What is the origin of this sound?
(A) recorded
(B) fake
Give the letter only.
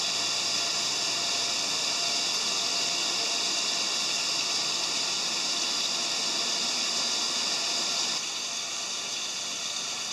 A